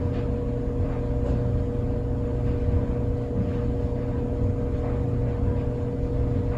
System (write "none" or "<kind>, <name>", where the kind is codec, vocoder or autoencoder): none